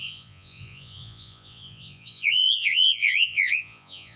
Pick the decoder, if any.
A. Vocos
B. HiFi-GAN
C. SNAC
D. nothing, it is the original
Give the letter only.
A